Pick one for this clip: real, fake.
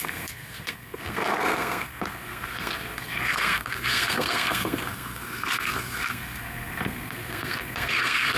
fake